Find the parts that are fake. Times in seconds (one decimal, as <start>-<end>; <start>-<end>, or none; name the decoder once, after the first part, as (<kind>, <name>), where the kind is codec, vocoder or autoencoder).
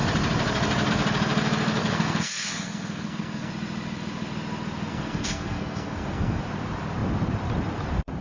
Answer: 1.8-3.5 (codec, SNAC); 4.9-6.4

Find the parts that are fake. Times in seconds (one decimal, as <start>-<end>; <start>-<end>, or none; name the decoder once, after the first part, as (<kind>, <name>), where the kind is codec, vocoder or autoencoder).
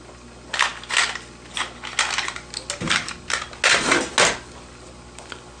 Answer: none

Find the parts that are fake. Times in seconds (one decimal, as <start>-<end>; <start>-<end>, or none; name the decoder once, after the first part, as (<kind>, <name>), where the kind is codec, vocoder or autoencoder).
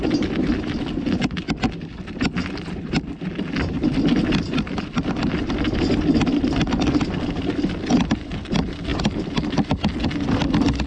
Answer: none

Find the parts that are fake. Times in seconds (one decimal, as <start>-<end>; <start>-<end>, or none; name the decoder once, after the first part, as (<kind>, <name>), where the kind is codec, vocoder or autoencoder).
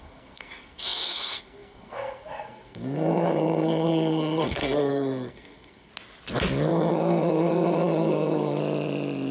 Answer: 0.0-5.9 (codec, SNAC); 6.7-8.6